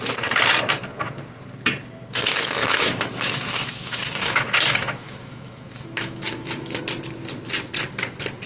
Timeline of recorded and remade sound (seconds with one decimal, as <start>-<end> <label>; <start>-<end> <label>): 0.0-2.6 recorded; 2.6-6.8 remade; 6.8-8.5 recorded